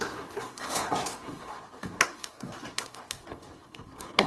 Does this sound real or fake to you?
fake